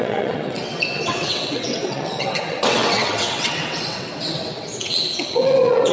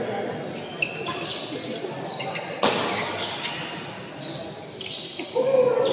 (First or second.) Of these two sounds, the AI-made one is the first